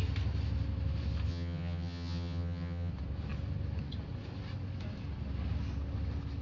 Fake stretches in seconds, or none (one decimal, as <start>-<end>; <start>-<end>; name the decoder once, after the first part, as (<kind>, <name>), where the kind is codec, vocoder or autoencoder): 1.3-2.9 (vocoder, HiFi-GAN)